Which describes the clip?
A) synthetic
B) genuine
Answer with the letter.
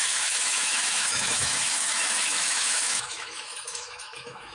A